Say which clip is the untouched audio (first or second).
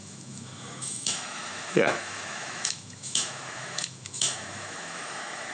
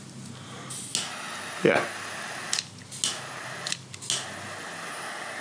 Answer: second